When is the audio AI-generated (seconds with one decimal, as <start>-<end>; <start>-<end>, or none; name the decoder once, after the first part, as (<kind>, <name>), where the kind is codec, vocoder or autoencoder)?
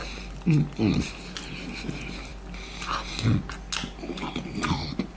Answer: none